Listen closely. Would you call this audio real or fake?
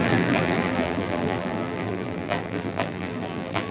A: fake